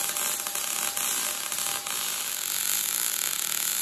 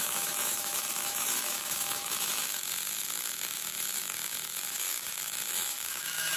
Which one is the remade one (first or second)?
second